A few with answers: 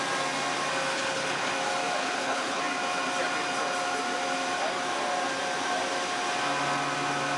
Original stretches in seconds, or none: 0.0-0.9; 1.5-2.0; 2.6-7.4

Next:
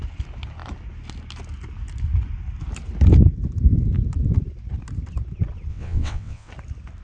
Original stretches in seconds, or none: 0.0-5.7; 6.5-7.0

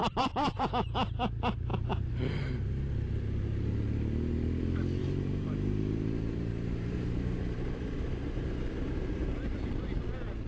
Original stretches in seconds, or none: 0.7-1.7; 2.2-5.0; 10.0-10.5

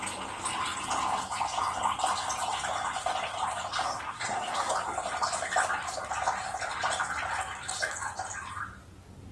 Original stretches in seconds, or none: 0.0-3.8; 4.7-9.3